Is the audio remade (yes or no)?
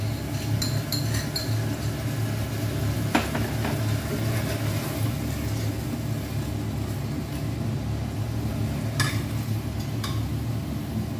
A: no